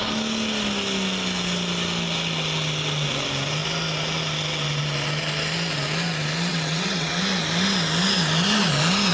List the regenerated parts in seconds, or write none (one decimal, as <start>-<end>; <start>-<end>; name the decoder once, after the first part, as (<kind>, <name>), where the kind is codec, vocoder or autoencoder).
6.5-7.1 (vocoder, WaveNeXt)